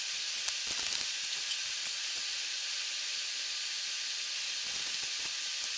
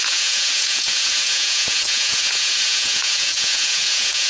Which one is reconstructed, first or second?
second